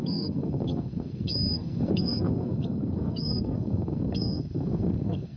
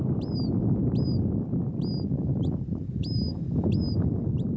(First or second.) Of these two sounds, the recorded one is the second